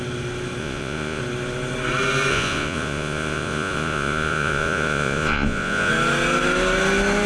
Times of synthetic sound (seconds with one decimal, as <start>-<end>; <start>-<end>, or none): 0.6-1.2; 2.3-5.9